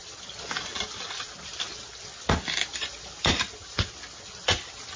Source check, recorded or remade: recorded